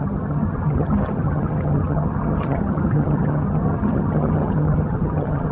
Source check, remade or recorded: remade